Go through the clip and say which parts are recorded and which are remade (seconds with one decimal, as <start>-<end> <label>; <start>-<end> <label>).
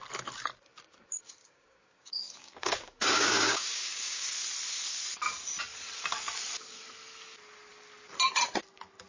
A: 0.0-1.4 recorded; 1.4-4.3 remade; 4.3-9.1 recorded